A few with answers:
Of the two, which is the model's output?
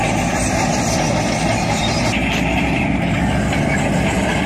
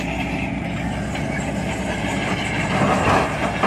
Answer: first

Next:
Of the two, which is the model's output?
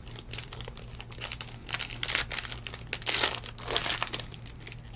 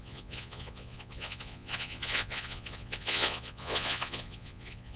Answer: second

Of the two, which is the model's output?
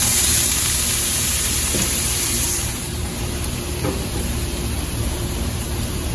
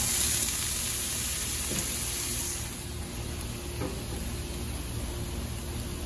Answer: first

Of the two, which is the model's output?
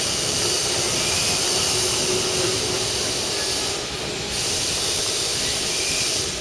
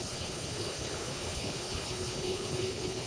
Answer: second